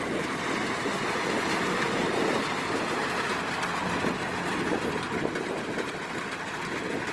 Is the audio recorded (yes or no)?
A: yes